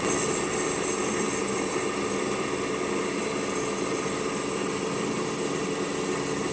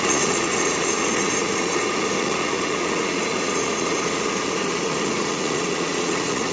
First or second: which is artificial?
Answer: second